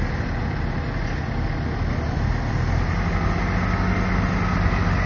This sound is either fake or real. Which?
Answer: real